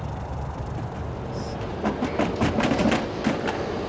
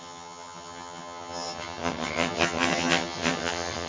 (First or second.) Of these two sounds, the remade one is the second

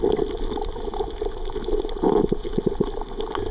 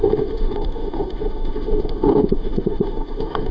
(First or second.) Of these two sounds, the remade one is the second